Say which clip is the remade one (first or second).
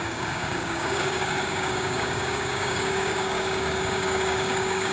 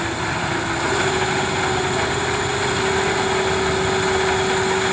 first